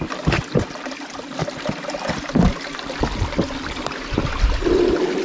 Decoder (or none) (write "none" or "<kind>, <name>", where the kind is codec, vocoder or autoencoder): none